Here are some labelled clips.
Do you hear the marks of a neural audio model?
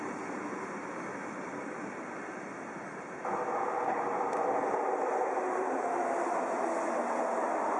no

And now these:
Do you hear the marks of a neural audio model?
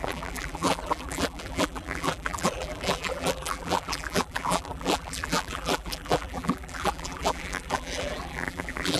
yes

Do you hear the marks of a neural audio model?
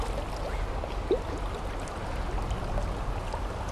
no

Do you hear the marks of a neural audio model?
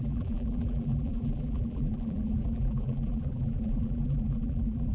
yes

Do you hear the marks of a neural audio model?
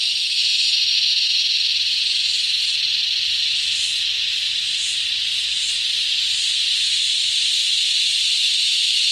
no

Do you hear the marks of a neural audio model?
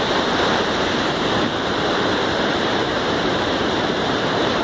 yes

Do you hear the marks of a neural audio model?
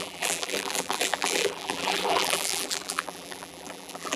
yes